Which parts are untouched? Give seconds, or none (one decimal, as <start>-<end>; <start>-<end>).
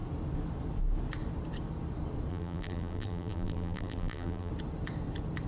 0.0-2.3; 4.5-5.5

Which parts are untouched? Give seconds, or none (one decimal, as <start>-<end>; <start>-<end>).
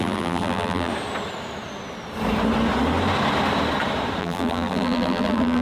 0.9-4.2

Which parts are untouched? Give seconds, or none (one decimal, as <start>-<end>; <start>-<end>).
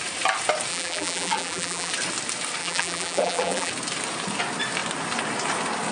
0.0-0.7; 1.9-2.6; 3.7-5.9